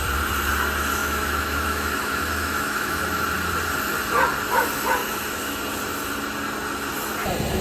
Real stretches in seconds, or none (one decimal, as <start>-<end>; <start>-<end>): 0.0-1.0; 2.9-5.0; 5.6-7.6